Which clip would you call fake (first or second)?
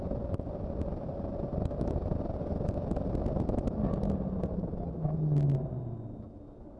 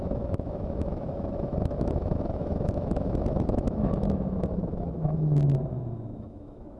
second